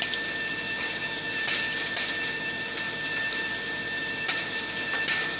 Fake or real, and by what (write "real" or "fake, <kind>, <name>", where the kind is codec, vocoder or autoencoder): real